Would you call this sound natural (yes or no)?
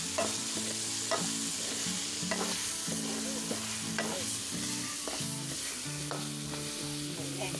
yes